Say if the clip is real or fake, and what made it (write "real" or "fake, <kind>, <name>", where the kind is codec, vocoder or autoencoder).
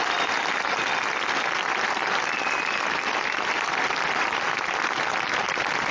real